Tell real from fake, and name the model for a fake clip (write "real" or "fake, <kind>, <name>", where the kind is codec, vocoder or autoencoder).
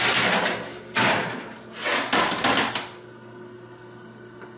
real